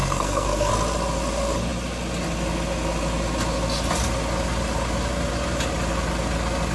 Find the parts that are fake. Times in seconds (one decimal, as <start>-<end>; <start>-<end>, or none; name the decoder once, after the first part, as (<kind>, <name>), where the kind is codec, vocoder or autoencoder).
0.0-0.7 (codec, SNAC)